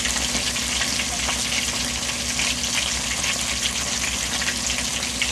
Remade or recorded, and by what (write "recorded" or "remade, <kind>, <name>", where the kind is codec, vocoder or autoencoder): recorded